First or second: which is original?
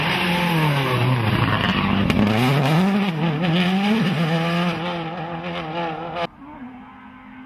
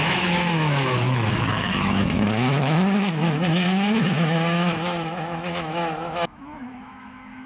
first